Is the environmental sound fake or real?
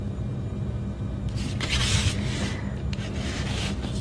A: real